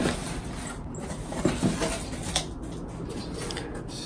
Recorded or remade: recorded